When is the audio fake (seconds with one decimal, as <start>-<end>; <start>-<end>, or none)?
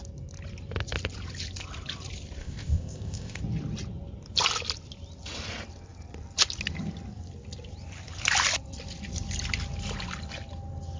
2.4-3.4